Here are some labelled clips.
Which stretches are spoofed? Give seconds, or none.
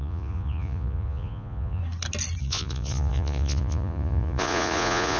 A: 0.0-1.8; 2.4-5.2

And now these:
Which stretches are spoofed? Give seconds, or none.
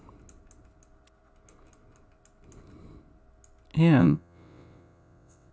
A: 4.0-5.5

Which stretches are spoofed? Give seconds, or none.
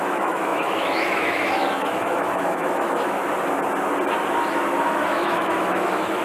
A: 0.0-3.2; 4.8-6.2